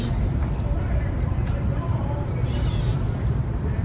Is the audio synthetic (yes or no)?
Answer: yes